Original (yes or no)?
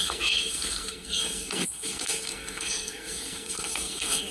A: no